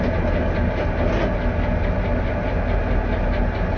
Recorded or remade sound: recorded